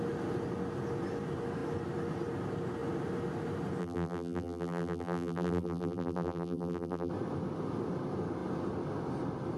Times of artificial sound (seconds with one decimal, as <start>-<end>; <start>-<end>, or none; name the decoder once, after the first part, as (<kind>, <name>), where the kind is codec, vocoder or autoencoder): 3.8-7.1 (vocoder, BigVGAN v2)